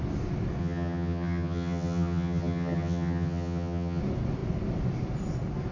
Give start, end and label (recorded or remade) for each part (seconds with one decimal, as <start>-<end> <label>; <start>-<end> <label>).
0.0-0.6 recorded; 0.6-4.0 remade; 4.0-5.7 recorded